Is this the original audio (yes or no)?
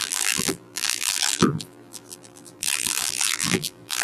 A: no